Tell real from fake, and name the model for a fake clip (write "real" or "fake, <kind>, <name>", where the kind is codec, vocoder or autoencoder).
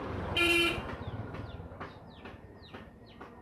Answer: real